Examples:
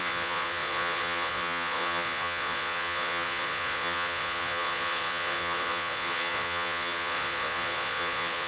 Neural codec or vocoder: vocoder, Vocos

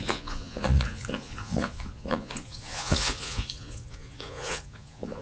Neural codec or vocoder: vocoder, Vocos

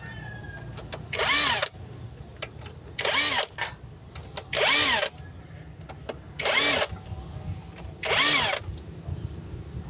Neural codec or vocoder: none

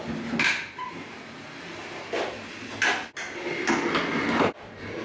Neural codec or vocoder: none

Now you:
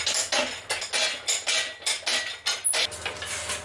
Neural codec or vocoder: none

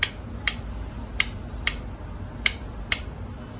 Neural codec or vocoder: none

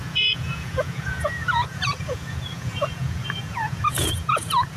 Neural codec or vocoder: vocoder, Vocos